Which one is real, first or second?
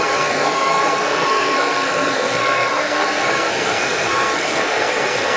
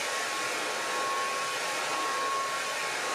second